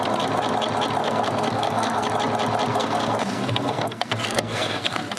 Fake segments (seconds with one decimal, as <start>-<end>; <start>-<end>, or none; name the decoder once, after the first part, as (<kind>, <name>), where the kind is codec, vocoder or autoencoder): 1.0-2.1 (codec, SNAC); 2.7-5.2